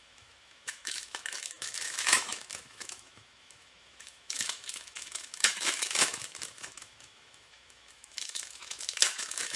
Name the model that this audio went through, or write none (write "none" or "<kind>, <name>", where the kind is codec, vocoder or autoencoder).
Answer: autoencoder, DAC-VAE